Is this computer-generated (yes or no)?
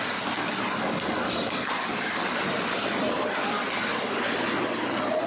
no